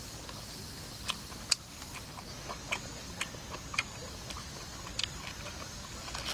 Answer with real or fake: real